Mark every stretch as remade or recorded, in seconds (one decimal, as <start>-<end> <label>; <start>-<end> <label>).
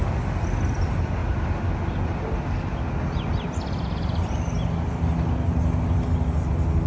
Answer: 0.0-6.9 recorded